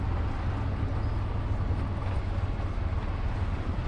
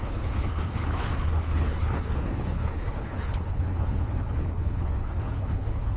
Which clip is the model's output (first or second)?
second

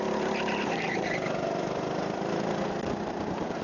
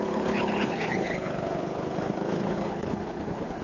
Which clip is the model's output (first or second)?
second